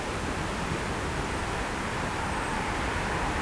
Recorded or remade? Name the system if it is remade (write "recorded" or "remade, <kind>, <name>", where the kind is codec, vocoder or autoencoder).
recorded